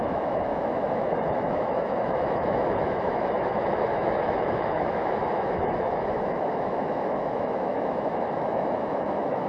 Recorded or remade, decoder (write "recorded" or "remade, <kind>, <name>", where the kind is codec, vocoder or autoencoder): remade, autoencoder, DAC-VAE